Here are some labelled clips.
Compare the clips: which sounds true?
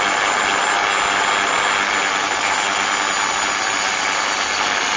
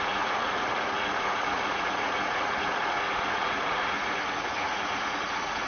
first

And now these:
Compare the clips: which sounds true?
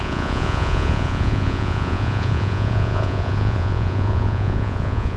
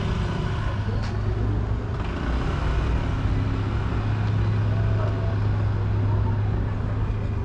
second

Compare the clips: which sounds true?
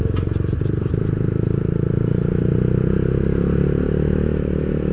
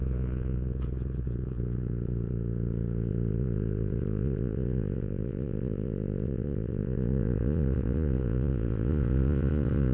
first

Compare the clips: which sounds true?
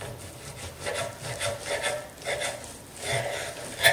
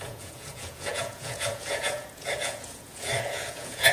first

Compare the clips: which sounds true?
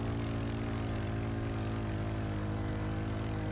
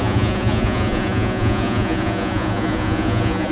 first